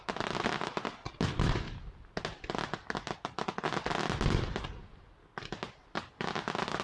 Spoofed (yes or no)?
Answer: no